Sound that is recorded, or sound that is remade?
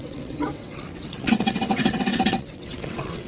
remade